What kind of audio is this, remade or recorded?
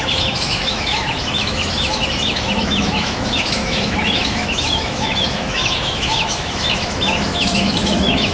remade